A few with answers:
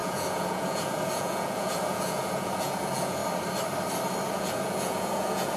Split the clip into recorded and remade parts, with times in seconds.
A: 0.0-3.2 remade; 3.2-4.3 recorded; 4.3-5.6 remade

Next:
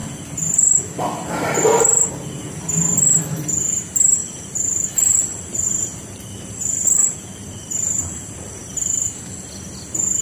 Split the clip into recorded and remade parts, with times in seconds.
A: 0.0-4.2 recorded; 4.2-9.2 remade; 9.2-10.2 recorded

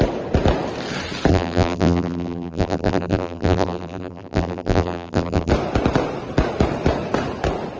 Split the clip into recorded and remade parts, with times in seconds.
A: 0.0-1.3 recorded; 1.3-5.5 remade; 5.5-7.8 recorded

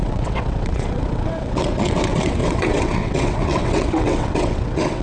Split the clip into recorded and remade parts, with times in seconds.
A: 0.0-5.0 remade

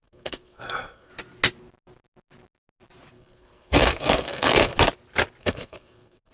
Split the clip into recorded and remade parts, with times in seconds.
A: 0.0-1.1 remade; 1.1-3.1 recorded; 3.1-4.7 remade; 4.7-5.4 recorded; 5.4-6.3 remade

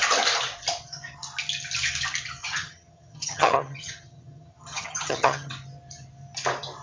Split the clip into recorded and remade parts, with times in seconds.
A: 0.0-2.4 recorded; 2.4-5.5 remade; 5.5-6.8 recorded

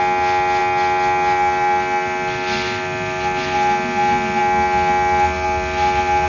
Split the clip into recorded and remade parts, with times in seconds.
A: 0.0-6.3 recorded